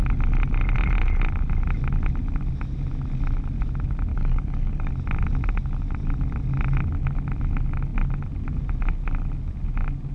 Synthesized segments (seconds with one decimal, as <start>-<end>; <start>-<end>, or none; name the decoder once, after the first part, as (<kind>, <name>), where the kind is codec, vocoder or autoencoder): 4.1-4.9 (codec, DAC)